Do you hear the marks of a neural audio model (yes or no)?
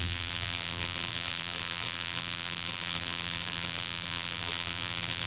yes